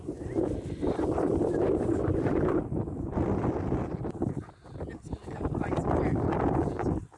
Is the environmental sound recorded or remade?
recorded